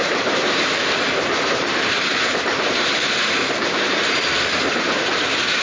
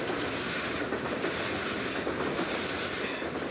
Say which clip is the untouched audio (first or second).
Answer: second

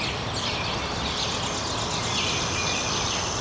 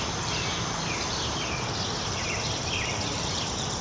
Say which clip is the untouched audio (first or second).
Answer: first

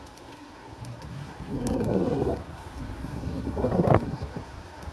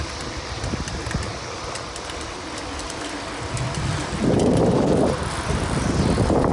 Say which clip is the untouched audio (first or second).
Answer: second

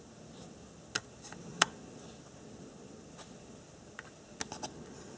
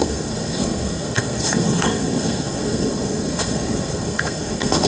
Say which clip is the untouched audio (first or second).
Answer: first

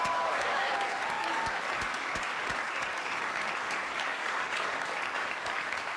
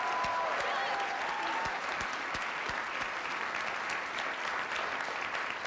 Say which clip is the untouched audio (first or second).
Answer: second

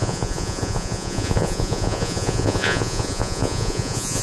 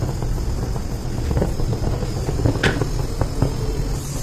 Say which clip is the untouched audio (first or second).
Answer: second